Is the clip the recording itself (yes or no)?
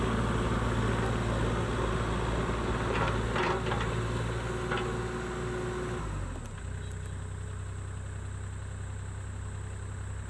yes